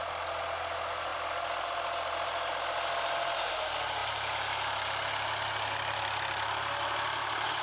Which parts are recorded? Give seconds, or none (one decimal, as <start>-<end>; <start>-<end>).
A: 0.0-7.6